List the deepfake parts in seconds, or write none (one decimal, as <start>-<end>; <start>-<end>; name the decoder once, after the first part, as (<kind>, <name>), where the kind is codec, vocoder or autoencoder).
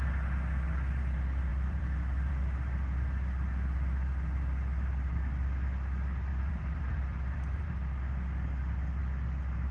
1.5-2.3 (vocoder, BigVGAN v2); 6.3-7.7